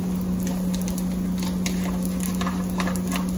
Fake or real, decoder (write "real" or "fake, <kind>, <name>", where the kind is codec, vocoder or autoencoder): real